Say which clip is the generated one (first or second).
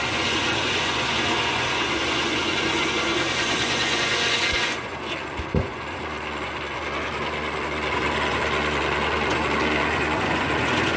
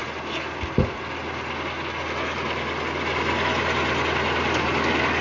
first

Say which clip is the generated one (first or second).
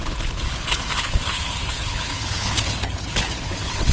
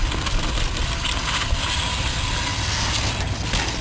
first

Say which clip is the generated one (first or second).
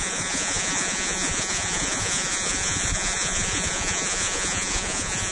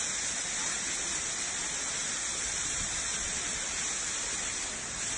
first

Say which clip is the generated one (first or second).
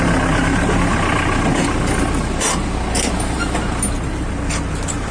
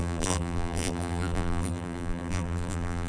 second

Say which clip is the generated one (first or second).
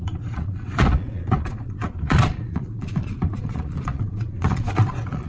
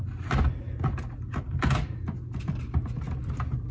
first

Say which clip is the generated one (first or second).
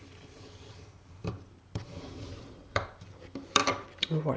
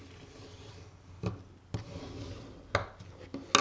first